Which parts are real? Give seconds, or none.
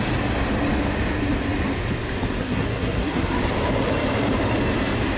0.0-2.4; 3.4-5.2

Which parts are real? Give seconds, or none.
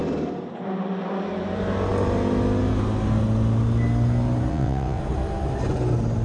0.0-4.5; 5.0-6.2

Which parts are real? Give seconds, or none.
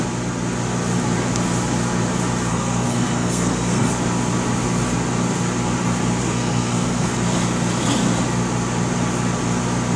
0.0-2.5; 3.9-6.2; 7.2-10.0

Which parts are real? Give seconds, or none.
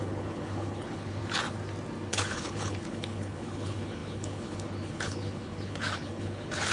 1.2-2.1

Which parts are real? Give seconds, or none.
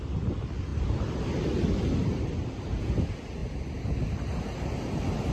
0.0-5.3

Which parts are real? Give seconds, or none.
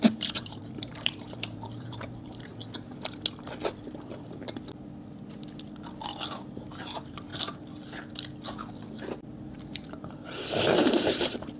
2.5-6.8; 7.3-9.5